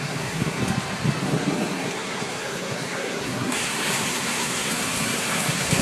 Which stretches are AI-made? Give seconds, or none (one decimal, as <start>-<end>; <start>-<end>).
0.0-0.6; 1.2-5.8